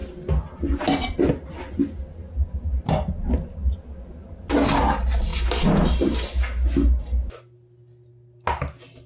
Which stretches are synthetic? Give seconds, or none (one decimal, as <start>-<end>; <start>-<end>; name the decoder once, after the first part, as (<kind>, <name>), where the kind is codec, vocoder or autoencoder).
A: none